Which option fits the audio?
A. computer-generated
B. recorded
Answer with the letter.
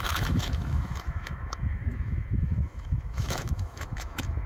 A